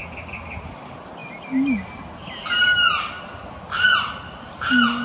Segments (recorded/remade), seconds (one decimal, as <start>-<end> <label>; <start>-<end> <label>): 0.0-5.0 recorded